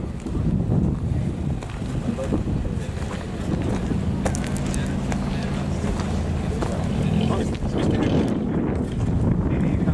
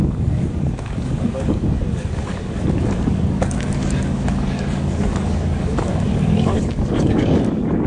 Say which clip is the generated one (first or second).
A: second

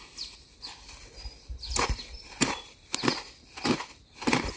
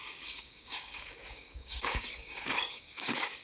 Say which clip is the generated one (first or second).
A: second